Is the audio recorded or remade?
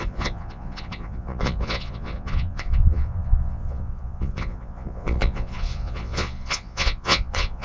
remade